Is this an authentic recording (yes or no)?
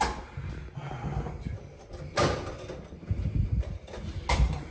yes